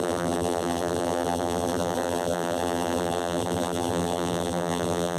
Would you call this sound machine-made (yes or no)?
yes